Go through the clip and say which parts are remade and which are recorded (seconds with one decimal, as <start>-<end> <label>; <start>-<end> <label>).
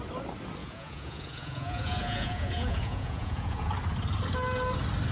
0.0-0.6 recorded; 0.6-3.7 remade; 3.7-5.1 recorded